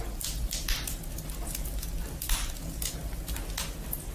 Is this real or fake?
real